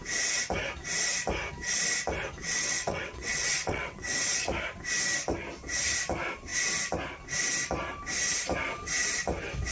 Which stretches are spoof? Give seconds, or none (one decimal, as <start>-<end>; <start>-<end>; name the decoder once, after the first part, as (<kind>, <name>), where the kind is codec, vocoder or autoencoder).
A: 2.4-4.5 (vocoder, WaveNeXt)